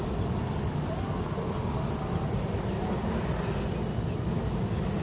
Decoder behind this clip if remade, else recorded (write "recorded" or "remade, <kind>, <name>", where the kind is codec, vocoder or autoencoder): recorded